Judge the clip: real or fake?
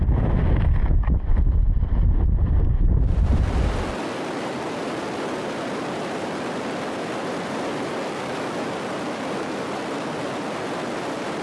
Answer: fake